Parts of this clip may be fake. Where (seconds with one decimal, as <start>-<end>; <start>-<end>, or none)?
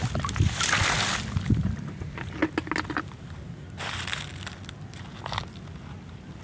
none